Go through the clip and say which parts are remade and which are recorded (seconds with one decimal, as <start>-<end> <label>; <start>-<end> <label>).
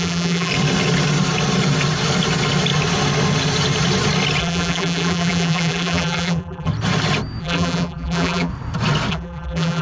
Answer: 0.0-0.5 remade; 0.5-4.4 recorded; 4.4-6.7 remade; 6.7-7.4 recorded; 7.4-8.5 remade; 8.5-9.1 recorded; 9.1-9.8 remade